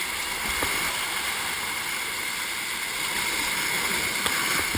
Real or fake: real